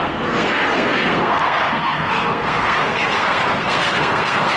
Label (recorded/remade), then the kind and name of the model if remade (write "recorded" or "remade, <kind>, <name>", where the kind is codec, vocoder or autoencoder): remade, codec, SNAC